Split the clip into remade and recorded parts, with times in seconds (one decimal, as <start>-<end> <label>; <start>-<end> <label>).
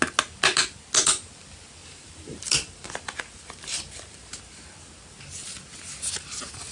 0.0-1.8 recorded; 1.8-4.4 remade; 4.4-6.7 recorded